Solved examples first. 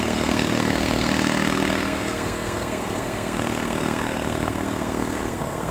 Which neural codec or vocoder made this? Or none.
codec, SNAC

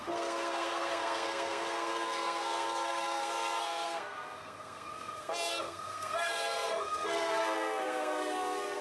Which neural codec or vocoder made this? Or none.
codec, SNAC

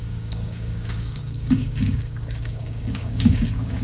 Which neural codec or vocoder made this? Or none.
codec, DAC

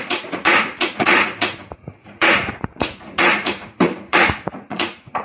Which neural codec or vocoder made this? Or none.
vocoder, Vocos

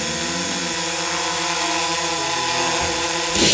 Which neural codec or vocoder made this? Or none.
none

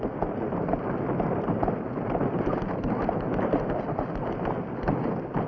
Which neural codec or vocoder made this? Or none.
none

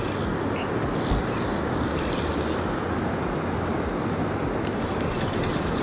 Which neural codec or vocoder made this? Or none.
none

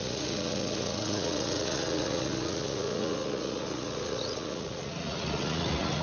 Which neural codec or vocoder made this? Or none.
vocoder, Vocos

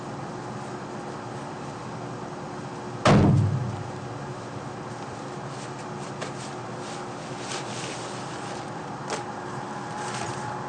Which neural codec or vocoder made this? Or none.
none